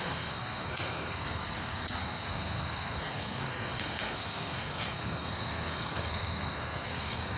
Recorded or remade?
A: remade